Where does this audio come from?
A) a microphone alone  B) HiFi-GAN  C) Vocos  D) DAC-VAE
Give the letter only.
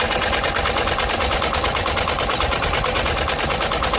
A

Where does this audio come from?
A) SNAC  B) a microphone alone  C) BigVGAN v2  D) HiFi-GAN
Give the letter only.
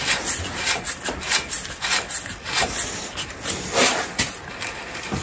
B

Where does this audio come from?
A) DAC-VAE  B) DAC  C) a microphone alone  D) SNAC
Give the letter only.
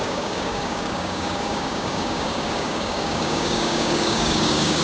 B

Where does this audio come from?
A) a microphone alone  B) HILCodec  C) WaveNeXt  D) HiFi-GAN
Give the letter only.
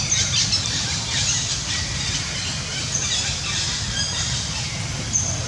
A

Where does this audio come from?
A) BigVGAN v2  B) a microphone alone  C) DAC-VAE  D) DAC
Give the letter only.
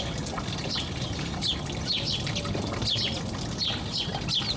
B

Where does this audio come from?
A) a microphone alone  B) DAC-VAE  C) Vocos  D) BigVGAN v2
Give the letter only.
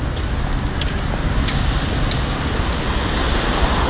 A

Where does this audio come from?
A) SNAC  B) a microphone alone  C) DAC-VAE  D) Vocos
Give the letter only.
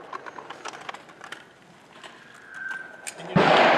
B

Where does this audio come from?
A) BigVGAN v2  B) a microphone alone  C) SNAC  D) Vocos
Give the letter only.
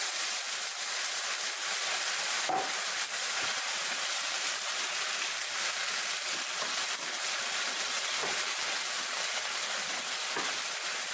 B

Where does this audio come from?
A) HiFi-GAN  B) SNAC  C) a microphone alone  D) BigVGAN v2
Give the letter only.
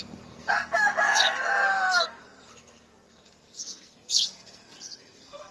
B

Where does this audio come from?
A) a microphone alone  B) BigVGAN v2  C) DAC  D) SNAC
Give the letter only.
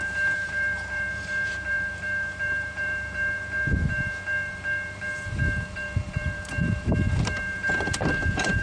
B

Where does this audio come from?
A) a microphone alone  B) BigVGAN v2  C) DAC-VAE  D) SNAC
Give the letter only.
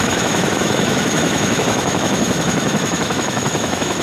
C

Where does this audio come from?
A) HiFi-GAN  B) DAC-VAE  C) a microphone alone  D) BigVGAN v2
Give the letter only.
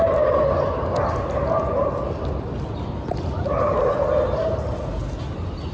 C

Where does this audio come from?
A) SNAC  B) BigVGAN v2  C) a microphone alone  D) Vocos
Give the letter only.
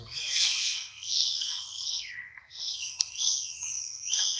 A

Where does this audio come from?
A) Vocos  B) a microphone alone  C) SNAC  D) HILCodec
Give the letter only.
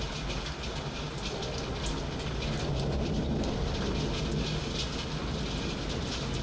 B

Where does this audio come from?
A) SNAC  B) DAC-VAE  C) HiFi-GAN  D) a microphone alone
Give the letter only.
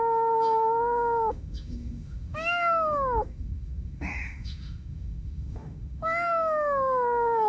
B